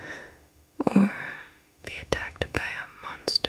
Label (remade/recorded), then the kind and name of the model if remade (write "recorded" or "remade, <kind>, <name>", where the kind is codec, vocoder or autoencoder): remade, autoencoder, DAC-VAE